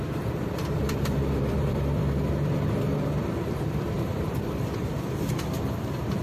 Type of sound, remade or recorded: remade